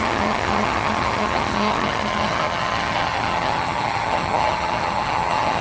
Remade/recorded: remade